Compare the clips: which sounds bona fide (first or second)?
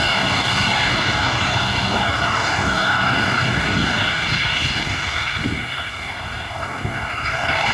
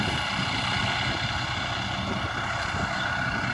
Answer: second